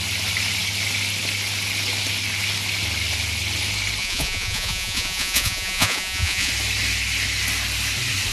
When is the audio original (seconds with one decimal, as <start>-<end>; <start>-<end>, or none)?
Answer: 0.0-4.0; 6.5-8.3